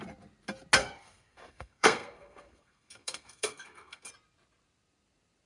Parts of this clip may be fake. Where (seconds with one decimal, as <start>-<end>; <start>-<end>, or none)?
0.8-4.1